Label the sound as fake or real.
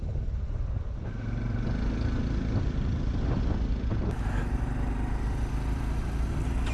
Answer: real